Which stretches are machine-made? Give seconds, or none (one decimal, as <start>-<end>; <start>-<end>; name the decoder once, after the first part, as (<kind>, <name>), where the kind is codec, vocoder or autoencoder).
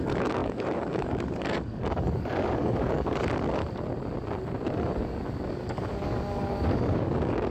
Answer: 0.0-3.6 (codec, DAC); 5.5-7.5